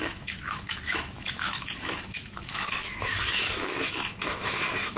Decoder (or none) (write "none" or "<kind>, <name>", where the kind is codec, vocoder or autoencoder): autoencoder, DAC-VAE